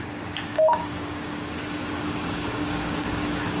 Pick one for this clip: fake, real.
fake